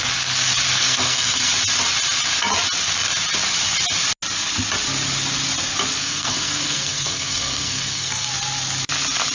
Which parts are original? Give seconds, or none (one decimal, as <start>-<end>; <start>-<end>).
0.0-0.7; 1.5-6.0; 8.3-9.3